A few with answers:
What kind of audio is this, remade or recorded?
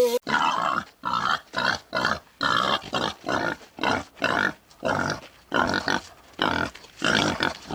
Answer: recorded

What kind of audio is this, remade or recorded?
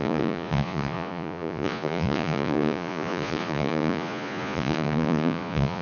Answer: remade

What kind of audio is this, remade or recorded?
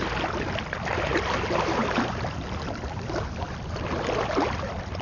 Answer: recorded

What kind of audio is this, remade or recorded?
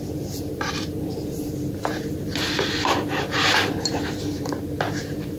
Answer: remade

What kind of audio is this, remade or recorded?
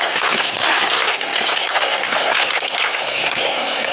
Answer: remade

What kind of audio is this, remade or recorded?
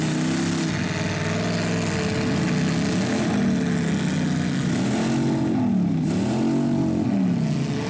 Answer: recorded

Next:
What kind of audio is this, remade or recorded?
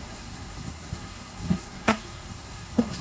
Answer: remade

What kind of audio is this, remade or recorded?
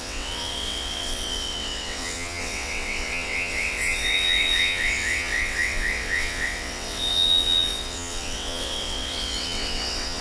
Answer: remade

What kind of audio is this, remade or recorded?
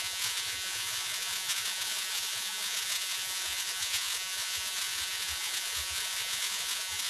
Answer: remade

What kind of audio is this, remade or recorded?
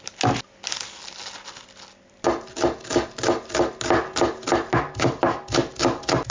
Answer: recorded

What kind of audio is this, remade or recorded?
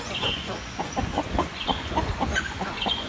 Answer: remade